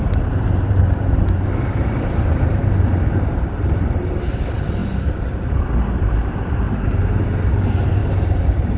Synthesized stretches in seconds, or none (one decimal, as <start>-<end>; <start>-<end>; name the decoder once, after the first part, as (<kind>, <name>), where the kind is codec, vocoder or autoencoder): 0.0-2.6 (vocoder, BigVGAN v2); 4.0-8.8